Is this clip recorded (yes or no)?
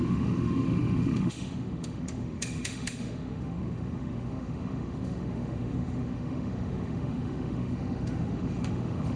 no